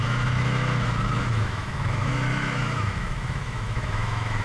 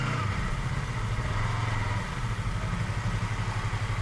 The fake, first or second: first